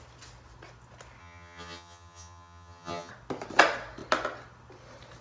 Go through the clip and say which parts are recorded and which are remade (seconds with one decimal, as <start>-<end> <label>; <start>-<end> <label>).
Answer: 0.0-1.2 recorded; 1.2-3.1 remade; 3.1-5.2 recorded